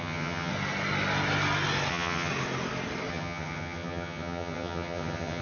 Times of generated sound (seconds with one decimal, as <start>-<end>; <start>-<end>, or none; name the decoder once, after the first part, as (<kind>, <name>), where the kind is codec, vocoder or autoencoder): 0.0-0.5 (vocoder, HiFi-GAN); 1.9-2.3; 3.1-5.4